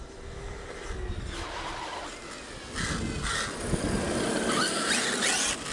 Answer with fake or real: real